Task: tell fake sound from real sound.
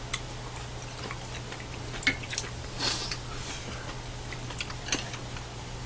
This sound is real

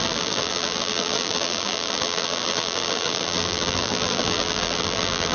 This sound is fake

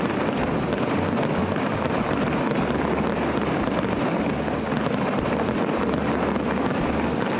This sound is fake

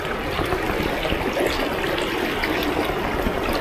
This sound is real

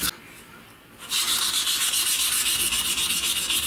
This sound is real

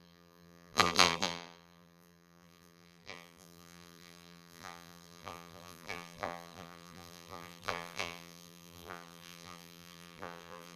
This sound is fake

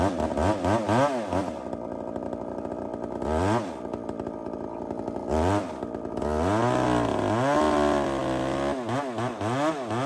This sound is real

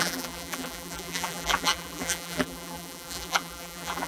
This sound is fake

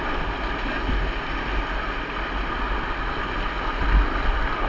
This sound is real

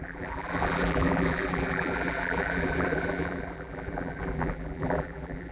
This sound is fake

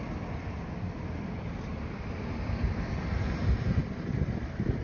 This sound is fake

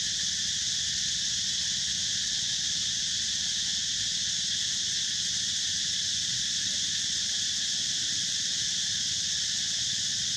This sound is real